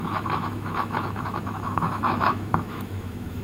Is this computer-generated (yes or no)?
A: yes